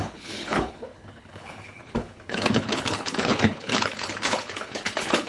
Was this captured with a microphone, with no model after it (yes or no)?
no